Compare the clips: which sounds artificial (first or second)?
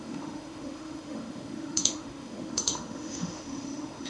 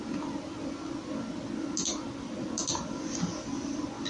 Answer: first